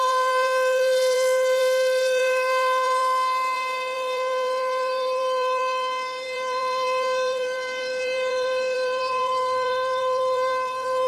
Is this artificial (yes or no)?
yes